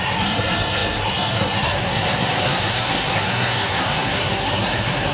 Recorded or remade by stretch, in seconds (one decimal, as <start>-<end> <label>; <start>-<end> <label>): 0.0-5.1 remade